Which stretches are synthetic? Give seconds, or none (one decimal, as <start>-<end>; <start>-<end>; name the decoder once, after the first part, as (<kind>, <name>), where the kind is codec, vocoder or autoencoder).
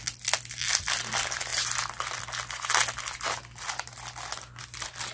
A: none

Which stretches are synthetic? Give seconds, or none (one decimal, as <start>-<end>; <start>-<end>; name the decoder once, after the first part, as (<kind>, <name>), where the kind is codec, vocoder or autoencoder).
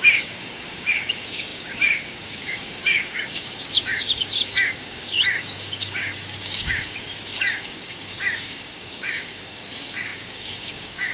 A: 0.0-11.1 (codec, DAC)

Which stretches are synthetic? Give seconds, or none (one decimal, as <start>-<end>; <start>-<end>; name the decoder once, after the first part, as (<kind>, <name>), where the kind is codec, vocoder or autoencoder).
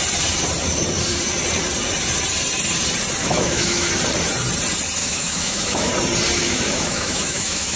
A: 3.2-3.9 (autoencoder, DAC-VAE); 5.0-5.9; 6.4-7.8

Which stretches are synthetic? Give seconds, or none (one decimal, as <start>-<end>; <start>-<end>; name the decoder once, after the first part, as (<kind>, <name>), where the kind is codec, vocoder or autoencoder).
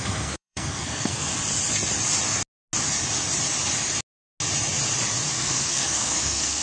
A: 0.0-1.3 (codec, SNAC); 5.3-6.6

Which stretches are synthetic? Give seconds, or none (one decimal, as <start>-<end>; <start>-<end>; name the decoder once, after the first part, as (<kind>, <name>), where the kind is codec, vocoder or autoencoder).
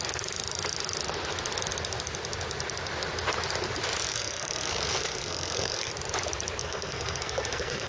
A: 4.1-5.9 (codec, SNAC); 6.6-7.9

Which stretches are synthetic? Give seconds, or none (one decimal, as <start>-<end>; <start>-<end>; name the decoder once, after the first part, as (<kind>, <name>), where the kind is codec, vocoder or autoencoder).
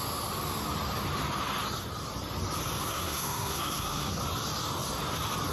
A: 2.8-4.2 (codec, SNAC)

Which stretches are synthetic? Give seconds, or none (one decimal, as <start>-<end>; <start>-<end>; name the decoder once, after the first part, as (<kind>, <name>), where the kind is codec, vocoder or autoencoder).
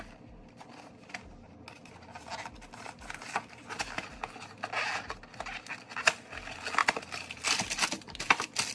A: none